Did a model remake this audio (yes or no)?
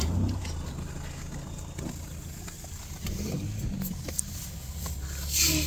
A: no